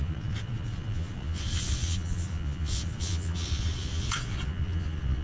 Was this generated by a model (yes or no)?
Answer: yes